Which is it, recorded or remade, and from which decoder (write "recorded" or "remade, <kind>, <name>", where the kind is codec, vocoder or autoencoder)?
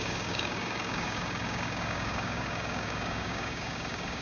remade, codec, DAC